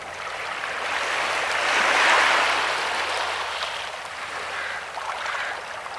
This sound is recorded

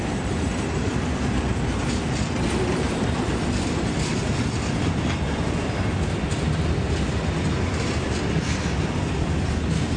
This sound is recorded